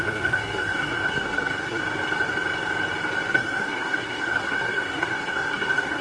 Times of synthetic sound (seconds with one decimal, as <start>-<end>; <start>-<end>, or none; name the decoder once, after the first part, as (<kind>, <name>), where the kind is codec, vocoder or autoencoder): 0.0-1.8 (codec, SNAC); 3.3-6.0